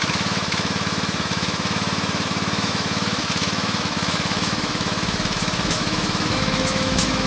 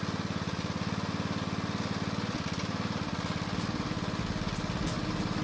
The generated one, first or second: first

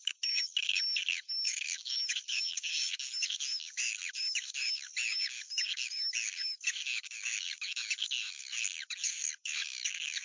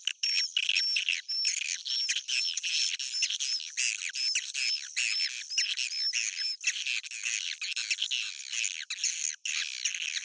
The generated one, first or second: first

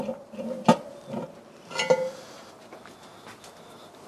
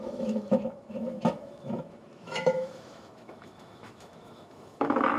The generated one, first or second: second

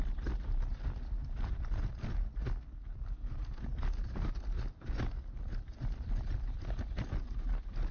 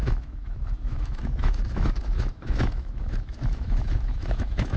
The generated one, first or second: second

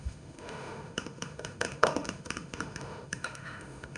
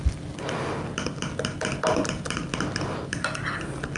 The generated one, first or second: first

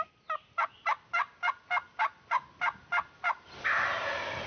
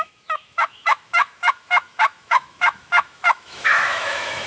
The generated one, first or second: second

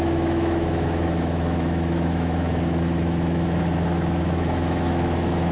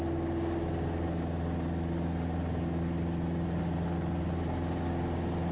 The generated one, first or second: first